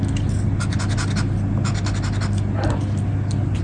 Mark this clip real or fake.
real